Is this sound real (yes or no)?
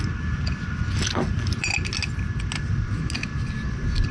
yes